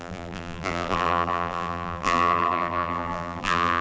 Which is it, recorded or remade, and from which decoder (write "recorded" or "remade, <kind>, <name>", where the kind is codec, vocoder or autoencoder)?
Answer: remade, vocoder, BigVGAN v2